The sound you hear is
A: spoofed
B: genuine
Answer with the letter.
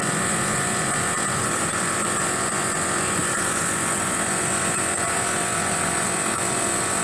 A